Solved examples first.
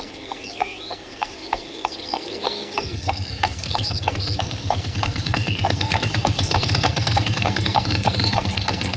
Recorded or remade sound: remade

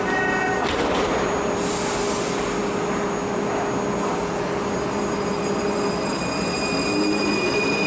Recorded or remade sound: recorded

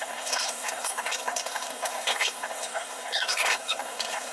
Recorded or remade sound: remade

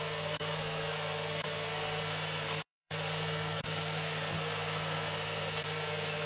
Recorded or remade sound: remade